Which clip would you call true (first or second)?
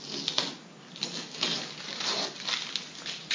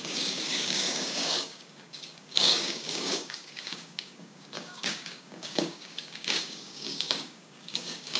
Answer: first